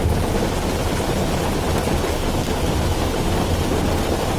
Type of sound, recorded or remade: recorded